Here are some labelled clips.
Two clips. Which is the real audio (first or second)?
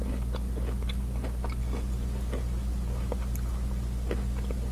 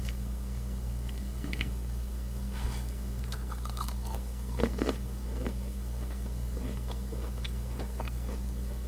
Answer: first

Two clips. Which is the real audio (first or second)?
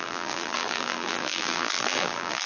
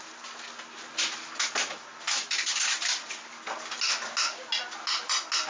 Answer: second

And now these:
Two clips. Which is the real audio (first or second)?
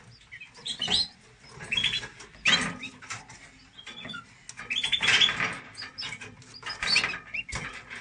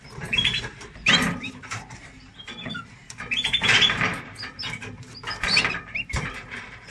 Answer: first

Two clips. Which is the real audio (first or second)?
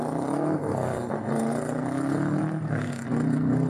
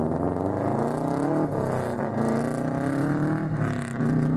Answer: second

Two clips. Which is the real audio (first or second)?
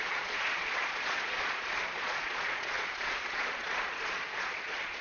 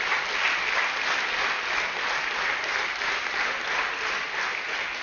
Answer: second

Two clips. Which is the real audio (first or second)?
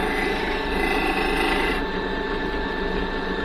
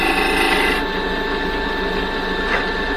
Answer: second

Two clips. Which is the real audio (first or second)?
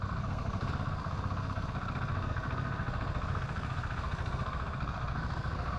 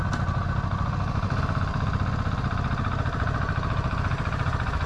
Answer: second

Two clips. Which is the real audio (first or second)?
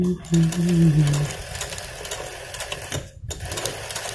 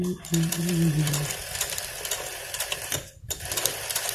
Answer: first